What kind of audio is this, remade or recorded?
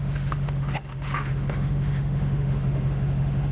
remade